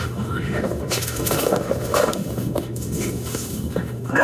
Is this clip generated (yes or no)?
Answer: yes